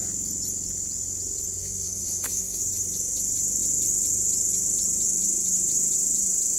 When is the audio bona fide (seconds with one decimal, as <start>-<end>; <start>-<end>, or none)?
0.0-1.6; 2.7-6.6